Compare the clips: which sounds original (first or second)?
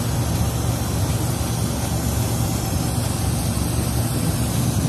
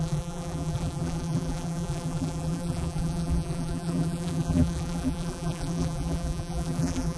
first